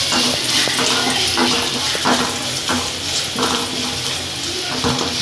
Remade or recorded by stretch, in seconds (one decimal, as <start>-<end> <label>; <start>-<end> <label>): 0.0-5.2 recorded